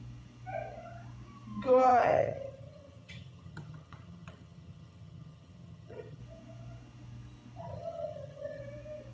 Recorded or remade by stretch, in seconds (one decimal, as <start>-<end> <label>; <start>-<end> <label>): 0.0-1.9 recorded; 1.9-6.2 remade; 6.2-7.6 recorded; 7.6-8.6 remade; 8.6-9.1 recorded